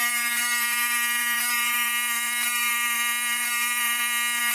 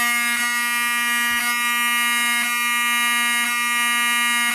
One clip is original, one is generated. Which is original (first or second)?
second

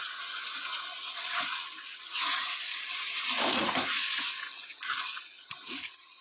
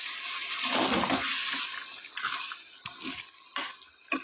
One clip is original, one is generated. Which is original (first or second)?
second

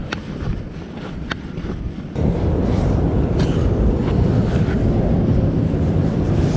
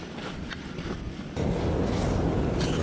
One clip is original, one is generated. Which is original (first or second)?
second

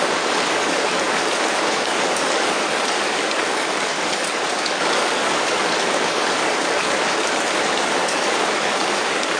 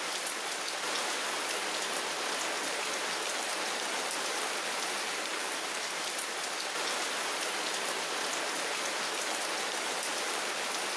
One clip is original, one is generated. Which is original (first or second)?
second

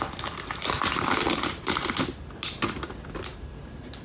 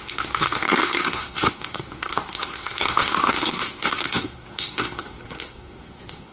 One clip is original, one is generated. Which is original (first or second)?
first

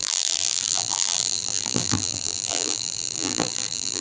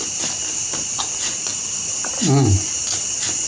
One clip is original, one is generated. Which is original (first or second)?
second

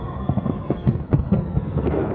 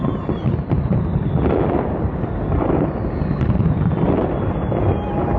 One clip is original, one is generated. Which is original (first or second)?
second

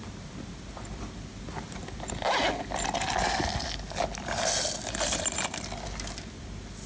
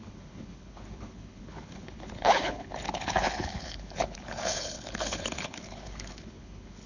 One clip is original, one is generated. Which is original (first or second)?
first